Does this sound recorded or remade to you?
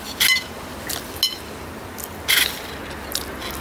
recorded